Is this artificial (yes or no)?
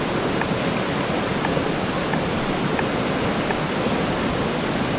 yes